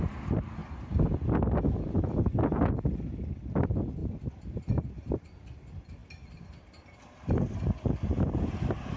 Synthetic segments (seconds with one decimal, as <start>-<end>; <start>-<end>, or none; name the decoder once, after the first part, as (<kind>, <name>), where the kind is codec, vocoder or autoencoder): 0.0-0.6 (vocoder, BigVGAN v2); 3.1-9.0